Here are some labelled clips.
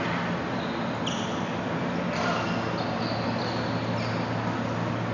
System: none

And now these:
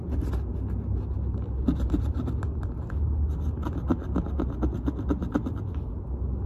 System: none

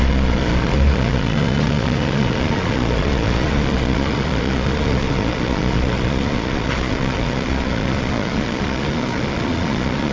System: vocoder, Vocos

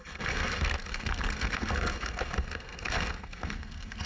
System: codec, SNAC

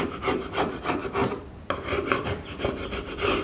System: none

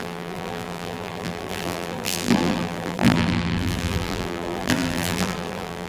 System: vocoder, BigVGAN v2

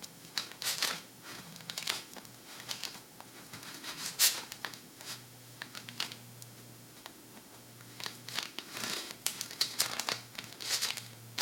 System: autoencoder, DAC-VAE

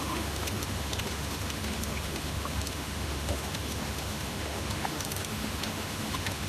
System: autoencoder, DAC-VAE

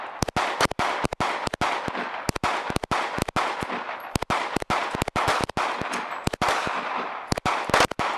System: none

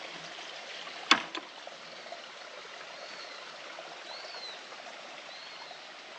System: none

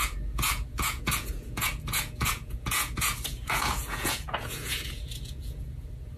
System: vocoder, Vocos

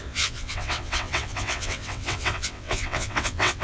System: vocoder, WaveNeXt